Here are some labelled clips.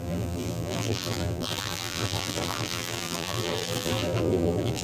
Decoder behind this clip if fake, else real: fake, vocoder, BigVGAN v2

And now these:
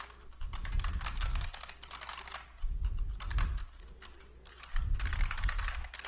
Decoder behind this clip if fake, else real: real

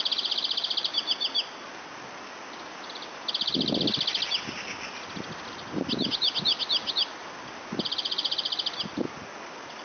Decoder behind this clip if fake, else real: real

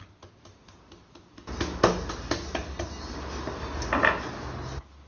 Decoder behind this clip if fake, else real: real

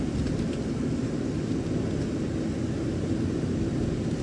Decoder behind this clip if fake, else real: real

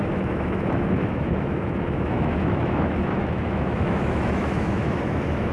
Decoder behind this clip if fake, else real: fake, autoencoder, DAC-VAE